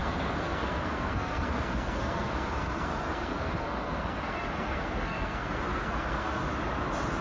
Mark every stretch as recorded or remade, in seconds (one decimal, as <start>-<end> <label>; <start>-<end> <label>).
0.0-6.4 remade; 6.4-7.2 recorded